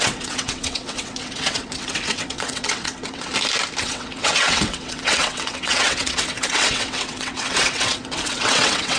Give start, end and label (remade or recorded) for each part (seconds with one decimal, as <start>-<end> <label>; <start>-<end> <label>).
0.0-3.3 remade; 3.3-3.8 recorded; 3.8-9.0 remade